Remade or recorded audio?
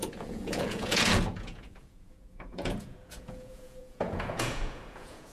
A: remade